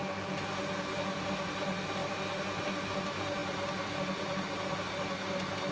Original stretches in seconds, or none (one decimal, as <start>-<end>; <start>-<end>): 0.0-5.7